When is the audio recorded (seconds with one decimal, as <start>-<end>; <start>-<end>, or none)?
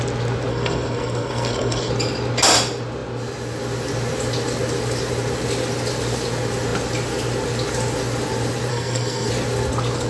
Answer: 0.0-0.5; 1.9-8.7; 9.3-10.1